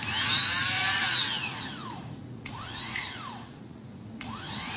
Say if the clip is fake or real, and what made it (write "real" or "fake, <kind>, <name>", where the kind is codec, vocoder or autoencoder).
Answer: fake, vocoder, Vocos